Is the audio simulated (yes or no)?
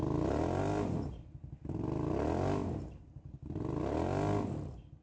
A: no